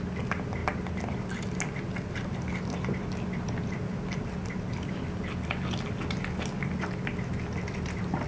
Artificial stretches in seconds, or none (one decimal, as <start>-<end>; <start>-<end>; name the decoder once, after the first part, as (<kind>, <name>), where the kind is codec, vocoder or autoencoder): none